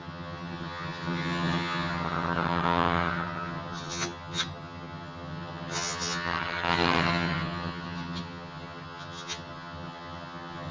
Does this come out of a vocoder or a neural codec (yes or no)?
yes